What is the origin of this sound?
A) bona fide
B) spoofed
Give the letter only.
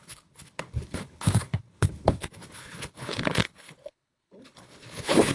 B